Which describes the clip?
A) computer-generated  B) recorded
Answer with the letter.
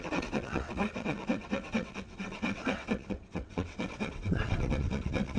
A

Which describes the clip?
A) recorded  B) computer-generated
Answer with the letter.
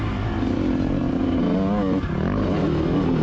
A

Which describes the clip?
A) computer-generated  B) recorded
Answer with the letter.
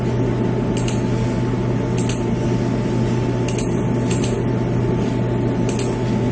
B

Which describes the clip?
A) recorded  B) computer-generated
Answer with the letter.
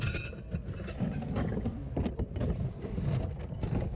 A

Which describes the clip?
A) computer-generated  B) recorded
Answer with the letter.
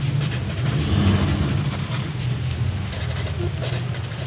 B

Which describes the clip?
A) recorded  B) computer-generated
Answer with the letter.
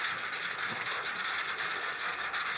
A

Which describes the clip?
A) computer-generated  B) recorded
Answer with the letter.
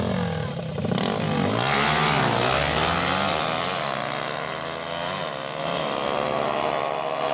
B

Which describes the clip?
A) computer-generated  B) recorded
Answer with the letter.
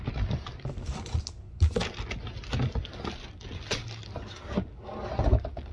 B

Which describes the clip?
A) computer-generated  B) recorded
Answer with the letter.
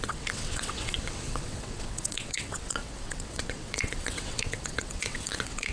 A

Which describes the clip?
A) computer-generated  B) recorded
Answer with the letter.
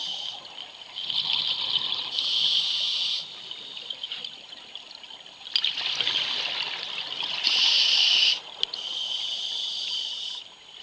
B